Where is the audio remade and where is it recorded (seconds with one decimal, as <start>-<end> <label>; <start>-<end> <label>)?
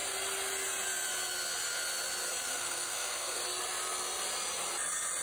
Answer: 0.0-2.5 recorded; 2.5-3.4 remade; 3.4-5.2 recorded